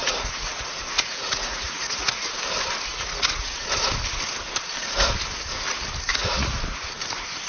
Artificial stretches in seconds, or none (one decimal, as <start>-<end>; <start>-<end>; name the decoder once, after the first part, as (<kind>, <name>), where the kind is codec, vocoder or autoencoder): 0.0-2.3 (vocoder, Vocos); 2.9-3.7; 6.1-6.6